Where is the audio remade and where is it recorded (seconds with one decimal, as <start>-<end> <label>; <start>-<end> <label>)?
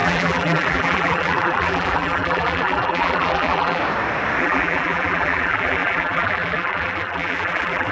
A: 0.0-3.8 remade; 3.8-4.4 recorded; 4.4-7.9 remade